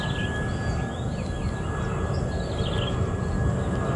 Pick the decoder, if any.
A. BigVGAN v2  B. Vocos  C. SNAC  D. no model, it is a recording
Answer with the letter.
D